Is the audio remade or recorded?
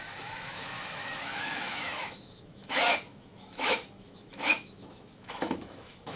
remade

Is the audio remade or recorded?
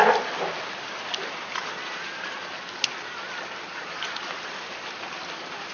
recorded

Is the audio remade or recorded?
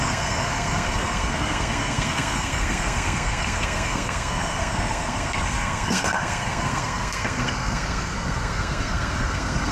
remade